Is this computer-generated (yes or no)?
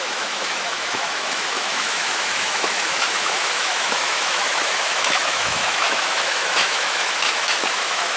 yes